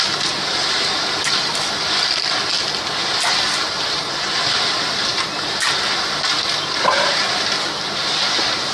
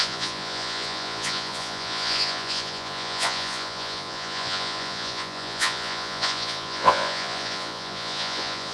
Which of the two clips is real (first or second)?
first